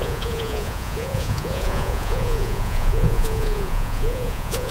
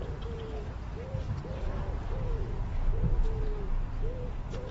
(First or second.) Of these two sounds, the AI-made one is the first